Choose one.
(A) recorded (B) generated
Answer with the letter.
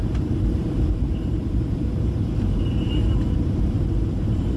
B